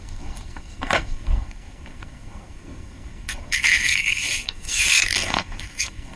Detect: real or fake fake